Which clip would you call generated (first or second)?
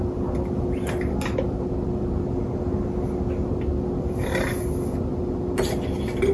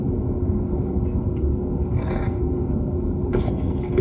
second